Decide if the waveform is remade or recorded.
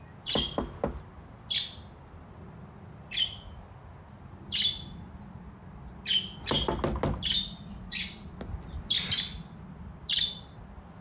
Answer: recorded